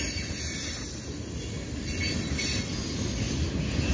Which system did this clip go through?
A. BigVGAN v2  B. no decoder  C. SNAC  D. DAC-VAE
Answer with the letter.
B